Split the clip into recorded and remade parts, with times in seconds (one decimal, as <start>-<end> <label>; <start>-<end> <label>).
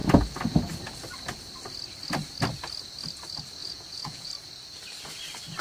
0.0-3.6 recorded; 3.6-4.3 remade; 4.3-5.6 recorded